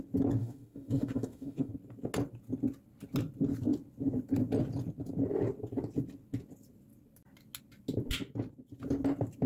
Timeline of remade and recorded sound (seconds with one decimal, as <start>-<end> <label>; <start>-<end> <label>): 0.0-0.4 recorded; 0.4-1.7 remade; 1.7-9.5 recorded